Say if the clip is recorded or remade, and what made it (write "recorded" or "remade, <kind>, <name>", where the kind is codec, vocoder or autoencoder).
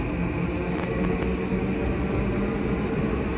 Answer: recorded